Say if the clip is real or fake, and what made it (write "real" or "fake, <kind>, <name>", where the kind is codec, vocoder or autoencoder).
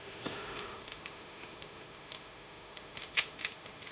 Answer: fake, autoencoder, DAC-VAE